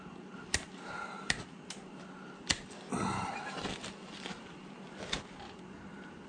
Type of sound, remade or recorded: recorded